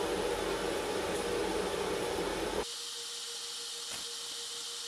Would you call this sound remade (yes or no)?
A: no